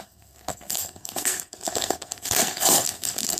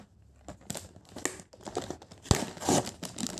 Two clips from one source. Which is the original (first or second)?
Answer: second